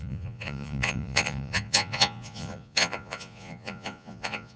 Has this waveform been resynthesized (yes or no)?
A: yes